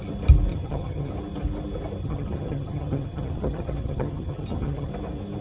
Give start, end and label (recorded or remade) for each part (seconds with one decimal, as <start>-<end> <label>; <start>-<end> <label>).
0.0-0.5 recorded; 0.5-1.1 remade; 1.1-2.0 recorded; 2.0-4.9 remade; 4.9-5.4 recorded